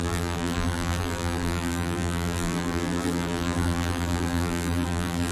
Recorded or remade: remade